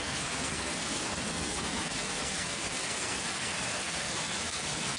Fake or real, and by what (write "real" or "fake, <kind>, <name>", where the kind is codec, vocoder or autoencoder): fake, codec, SNAC